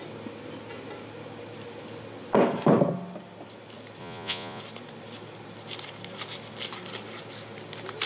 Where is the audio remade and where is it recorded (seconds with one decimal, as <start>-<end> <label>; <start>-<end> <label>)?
0.0-4.0 recorded; 4.0-4.6 remade; 4.6-8.1 recorded

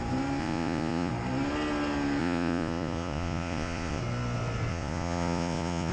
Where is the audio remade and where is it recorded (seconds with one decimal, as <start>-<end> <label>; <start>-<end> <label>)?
0.0-0.4 recorded; 0.4-1.1 remade; 1.1-2.2 recorded; 2.2-4.0 remade; 4.0-4.7 recorded; 4.7-5.9 remade

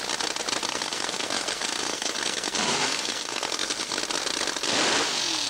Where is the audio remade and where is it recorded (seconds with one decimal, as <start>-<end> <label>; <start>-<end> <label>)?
0.0-0.7 recorded; 0.7-4.0 remade; 4.0-5.5 recorded

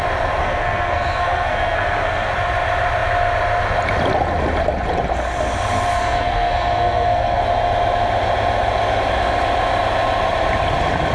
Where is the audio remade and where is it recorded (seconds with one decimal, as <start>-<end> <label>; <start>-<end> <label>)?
0.0-0.4 recorded; 0.4-2.3 remade; 2.3-5.9 recorded; 5.9-7.4 remade; 7.4-11.1 recorded